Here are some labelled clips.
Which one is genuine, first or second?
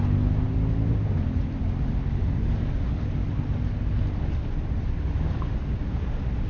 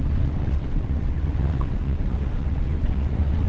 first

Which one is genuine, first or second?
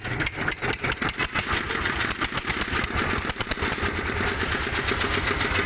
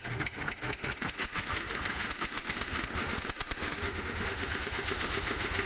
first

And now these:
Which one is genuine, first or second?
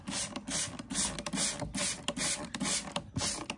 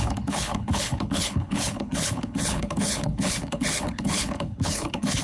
first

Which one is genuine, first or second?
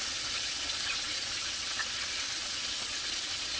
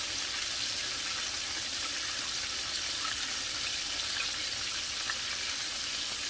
second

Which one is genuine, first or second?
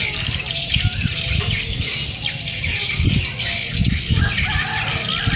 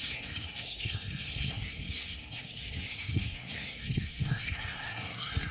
first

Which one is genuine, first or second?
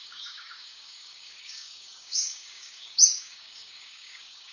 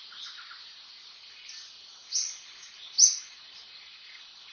second